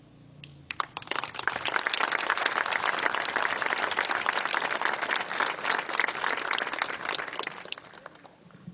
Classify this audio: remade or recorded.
recorded